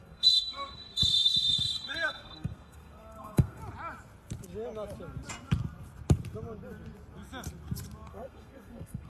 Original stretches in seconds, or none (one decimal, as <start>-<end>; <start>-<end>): 3.6-8.1